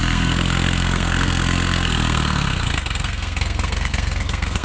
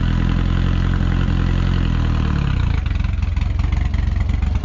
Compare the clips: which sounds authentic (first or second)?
second